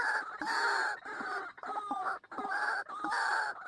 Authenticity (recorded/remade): recorded